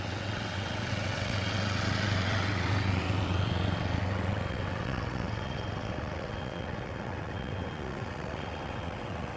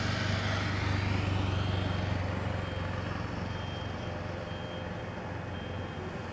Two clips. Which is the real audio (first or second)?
second